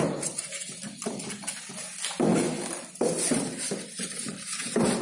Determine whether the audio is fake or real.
real